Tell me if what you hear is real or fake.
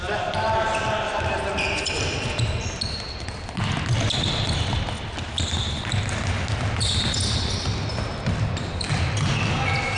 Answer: real